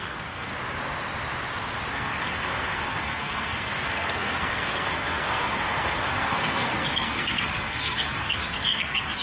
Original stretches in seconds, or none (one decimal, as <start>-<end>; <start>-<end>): 0.5-1.9

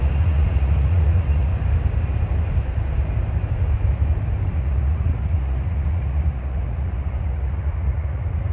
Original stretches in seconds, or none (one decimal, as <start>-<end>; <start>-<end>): 1.5-4.5